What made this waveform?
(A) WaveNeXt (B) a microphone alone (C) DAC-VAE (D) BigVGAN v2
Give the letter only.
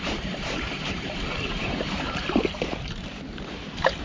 D